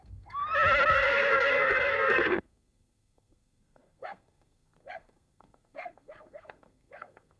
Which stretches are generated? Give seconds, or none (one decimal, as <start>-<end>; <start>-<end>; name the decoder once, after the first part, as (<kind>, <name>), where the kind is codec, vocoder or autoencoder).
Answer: 0.0-0.4 (codec, SNAC); 0.9-7.4